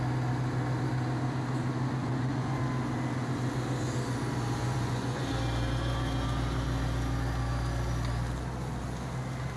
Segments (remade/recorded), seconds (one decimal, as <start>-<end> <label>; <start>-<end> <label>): 0.0-2.0 recorded; 2.0-2.6 remade; 2.6-4.6 recorded; 4.6-5.2 remade; 5.2-9.6 recorded